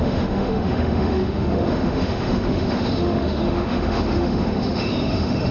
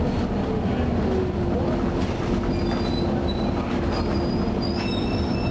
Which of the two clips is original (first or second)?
second